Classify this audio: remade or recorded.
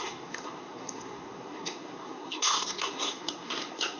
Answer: remade